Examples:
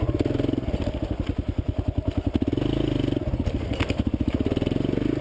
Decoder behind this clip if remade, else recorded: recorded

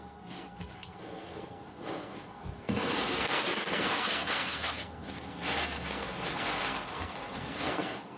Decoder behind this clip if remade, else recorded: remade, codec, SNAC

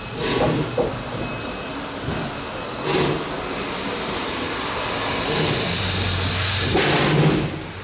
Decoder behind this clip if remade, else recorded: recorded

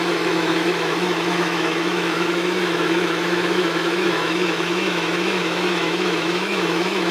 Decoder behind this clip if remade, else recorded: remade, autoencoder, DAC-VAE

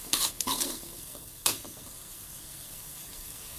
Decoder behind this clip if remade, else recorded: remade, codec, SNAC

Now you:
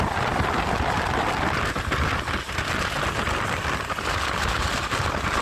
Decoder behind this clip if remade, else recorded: recorded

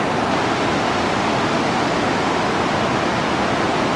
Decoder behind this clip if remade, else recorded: recorded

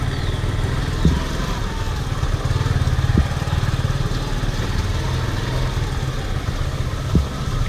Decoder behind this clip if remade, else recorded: recorded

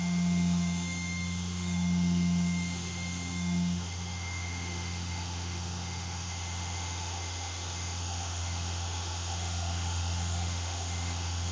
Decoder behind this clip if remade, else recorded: remade, autoencoder, DAC-VAE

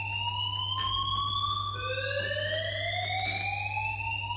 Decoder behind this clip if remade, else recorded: recorded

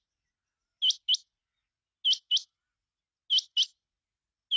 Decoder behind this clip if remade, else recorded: recorded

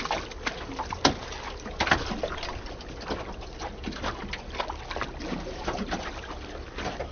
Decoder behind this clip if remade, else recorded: recorded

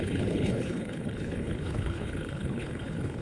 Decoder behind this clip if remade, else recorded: remade, codec, HILCodec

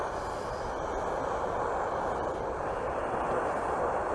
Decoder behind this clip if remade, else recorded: recorded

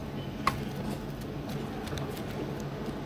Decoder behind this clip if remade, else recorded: recorded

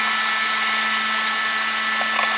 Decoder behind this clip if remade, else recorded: recorded